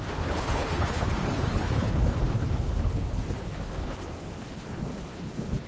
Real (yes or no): no